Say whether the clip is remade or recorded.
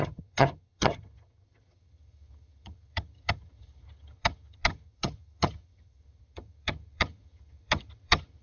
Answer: remade